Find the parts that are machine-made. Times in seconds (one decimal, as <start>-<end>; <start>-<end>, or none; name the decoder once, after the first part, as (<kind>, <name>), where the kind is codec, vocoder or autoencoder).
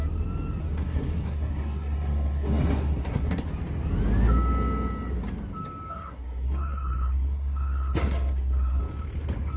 0.6-3.5 (codec, SNAC); 5.9-8.8